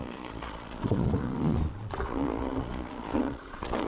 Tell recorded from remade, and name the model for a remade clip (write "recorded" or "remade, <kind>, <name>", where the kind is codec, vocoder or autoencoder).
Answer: remade, vocoder, Vocos